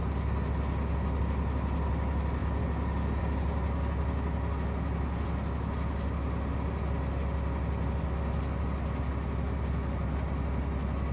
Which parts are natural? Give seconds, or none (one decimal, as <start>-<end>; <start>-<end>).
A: 0.0-11.1